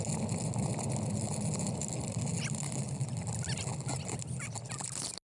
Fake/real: real